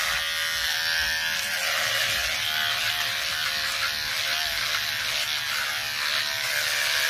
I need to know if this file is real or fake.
real